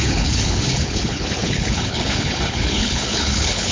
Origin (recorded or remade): remade